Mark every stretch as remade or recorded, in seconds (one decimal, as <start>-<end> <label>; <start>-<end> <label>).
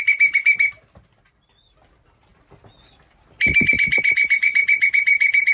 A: 0.0-2.3 remade; 2.3-3.7 recorded; 3.7-5.5 remade